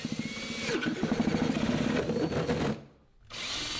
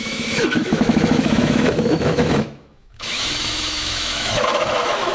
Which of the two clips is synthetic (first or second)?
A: second